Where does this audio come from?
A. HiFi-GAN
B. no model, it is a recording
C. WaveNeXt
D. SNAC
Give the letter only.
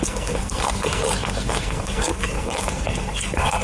D